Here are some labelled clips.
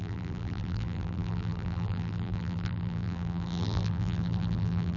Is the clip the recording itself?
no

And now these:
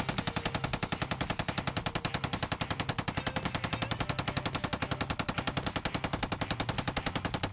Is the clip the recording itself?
yes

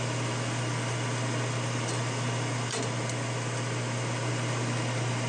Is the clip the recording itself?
yes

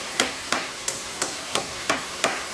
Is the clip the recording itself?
no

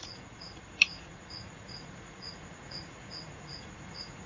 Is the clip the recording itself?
no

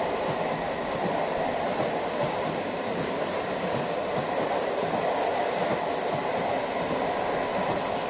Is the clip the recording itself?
yes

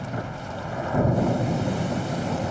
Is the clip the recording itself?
yes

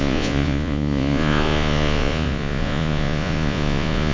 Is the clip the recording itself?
no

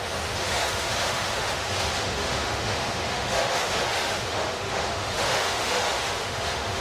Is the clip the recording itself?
no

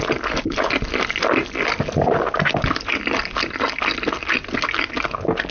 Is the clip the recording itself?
yes